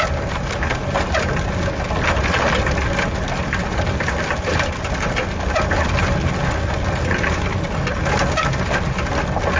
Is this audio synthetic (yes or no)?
no